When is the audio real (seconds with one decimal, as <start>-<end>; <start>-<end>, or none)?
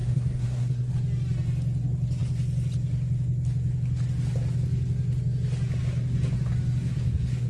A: 0.9-6.9